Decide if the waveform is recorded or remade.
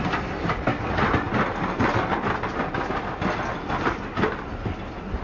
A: recorded